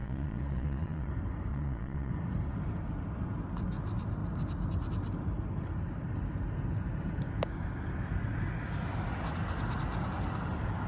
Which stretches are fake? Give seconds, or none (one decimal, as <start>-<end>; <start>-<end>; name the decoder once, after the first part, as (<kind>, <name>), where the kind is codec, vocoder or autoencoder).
0.0-1.1 (vocoder, Vocos); 1.5-2.1